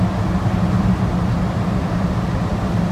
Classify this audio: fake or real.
real